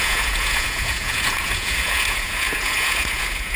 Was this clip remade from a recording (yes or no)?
yes